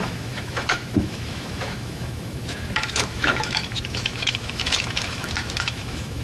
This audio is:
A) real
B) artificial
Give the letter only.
B